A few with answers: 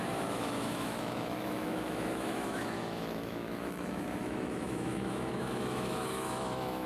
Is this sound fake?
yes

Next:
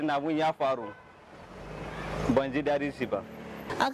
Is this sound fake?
no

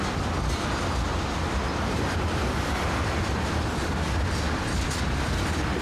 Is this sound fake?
no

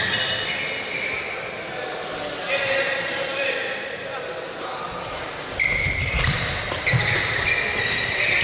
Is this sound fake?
no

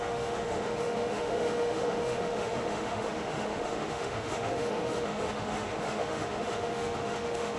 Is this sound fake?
yes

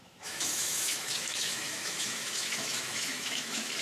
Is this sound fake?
yes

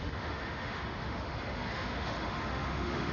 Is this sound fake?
yes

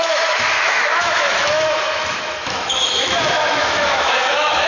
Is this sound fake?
yes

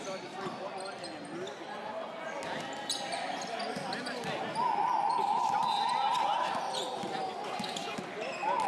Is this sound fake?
no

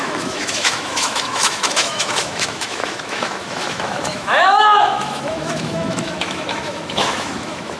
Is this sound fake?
yes